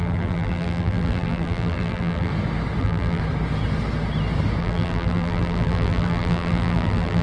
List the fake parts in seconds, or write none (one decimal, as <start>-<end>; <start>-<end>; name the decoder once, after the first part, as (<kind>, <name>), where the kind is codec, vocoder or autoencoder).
0.0-2.3 (vocoder, BigVGAN v2); 2.8-3.2; 4.6-7.2